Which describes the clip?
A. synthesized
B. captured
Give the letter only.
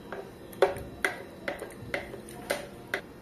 B